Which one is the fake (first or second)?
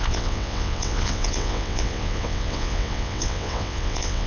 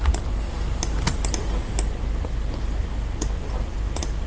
first